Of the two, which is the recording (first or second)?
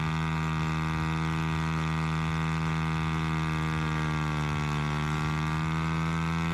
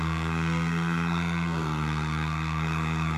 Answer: first